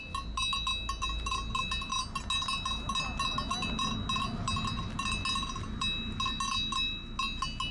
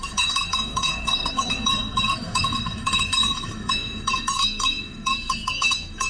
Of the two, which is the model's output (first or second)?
second